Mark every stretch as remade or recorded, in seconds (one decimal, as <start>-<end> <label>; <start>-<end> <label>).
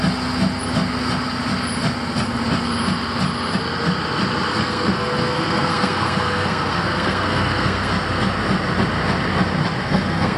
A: 0.0-4.5 recorded; 4.5-7.9 remade; 7.9-9.8 recorded; 9.8-10.4 remade